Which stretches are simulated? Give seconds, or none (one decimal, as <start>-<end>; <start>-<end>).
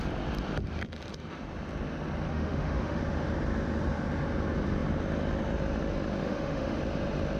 2.3-3.0; 6.2-6.8